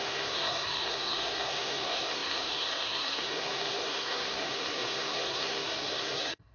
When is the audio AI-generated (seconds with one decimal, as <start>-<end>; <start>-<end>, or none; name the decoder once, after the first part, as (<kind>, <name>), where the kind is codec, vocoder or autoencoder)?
0.0-6.5 (codec, SNAC)